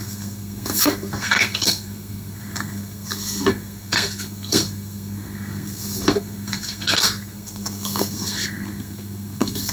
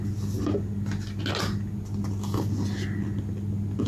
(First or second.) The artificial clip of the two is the first